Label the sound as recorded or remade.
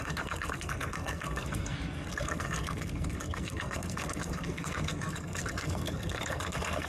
remade